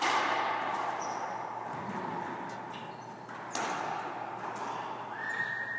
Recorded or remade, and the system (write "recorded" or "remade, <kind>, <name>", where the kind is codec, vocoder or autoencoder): recorded